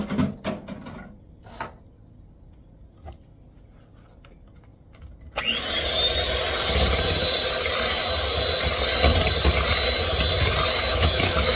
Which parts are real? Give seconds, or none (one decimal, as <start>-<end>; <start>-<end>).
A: 0.0-10.9